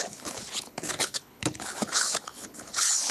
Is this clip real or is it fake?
fake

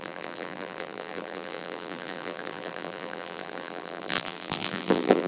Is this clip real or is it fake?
fake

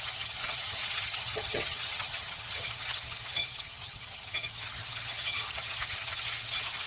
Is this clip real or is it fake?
fake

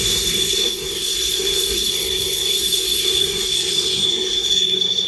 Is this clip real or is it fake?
fake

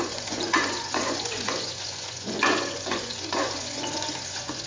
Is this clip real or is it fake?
fake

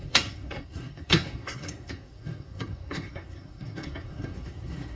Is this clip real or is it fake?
fake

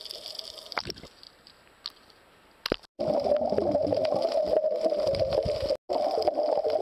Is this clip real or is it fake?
real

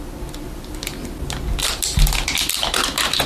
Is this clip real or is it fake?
real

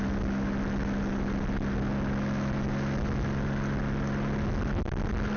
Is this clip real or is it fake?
real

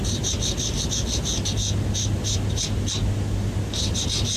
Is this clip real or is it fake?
real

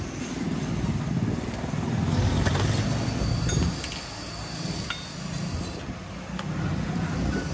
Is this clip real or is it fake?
real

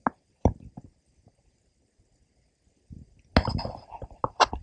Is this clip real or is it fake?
real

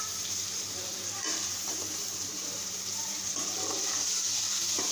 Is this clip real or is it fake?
fake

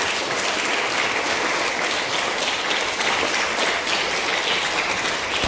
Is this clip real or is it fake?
real